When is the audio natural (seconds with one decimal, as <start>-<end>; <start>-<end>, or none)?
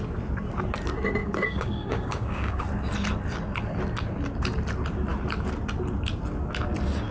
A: 0.0-1.2; 2.6-7.1